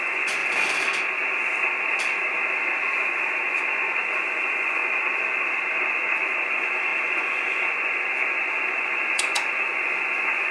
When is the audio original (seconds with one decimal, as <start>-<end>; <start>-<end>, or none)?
0.4-3.5; 4.8-6.3